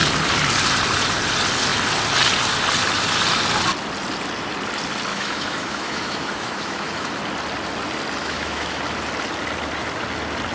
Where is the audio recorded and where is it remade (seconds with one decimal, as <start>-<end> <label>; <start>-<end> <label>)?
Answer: 0.0-5.1 recorded; 5.1-7.2 remade; 7.2-8.2 recorded; 8.2-8.8 remade; 8.8-10.5 recorded